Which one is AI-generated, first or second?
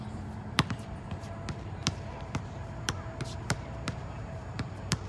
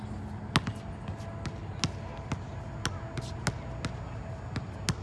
first